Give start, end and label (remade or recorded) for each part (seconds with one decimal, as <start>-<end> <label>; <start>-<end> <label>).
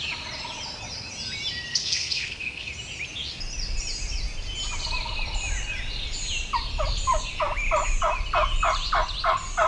0.0-1.7 recorded; 1.7-2.7 remade; 2.7-9.7 recorded